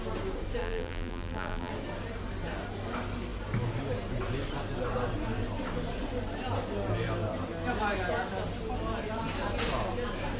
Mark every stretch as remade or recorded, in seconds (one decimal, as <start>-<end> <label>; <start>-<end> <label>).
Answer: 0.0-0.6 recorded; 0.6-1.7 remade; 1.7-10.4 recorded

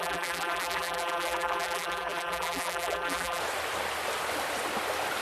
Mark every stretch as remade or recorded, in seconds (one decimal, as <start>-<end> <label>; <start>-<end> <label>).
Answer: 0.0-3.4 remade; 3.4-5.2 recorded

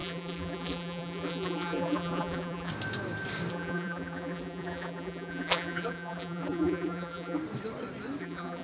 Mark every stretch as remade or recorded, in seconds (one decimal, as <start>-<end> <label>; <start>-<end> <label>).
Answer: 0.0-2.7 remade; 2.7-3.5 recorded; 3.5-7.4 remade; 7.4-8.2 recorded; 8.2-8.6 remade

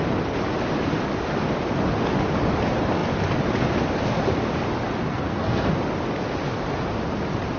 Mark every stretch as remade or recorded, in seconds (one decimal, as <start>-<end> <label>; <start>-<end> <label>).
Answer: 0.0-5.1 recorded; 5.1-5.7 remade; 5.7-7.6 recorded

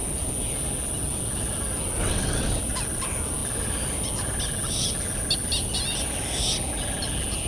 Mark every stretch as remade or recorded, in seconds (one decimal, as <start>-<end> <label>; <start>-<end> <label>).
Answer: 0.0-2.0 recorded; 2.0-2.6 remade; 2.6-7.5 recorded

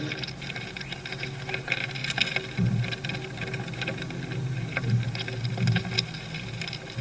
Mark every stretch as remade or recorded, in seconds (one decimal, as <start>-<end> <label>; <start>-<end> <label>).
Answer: 0.0-7.0 recorded

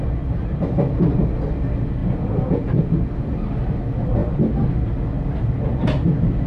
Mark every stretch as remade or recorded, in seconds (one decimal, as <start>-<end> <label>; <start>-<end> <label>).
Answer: 0.0-2.0 recorded; 2.0-3.1 remade; 3.1-6.5 recorded